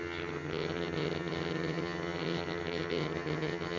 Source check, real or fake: fake